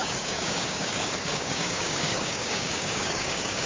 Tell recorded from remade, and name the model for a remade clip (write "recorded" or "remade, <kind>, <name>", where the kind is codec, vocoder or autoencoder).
remade, codec, DAC